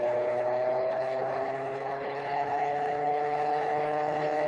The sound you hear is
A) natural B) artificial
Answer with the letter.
B